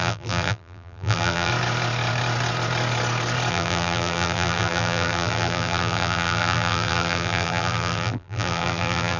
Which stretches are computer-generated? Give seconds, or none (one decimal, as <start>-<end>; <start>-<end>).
0.0-1.5; 3.5-9.2